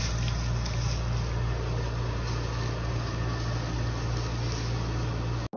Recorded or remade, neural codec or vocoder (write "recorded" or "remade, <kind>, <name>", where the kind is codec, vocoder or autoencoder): recorded